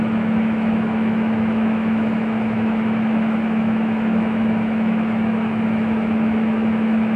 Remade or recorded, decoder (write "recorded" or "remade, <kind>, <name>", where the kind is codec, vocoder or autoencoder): remade, autoencoder, DAC-VAE